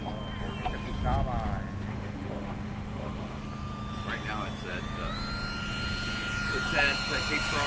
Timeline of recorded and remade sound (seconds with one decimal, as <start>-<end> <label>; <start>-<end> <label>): 0.0-1.9 recorded; 1.9-3.4 remade; 3.4-7.7 recorded